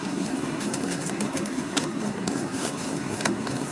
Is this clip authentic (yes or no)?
no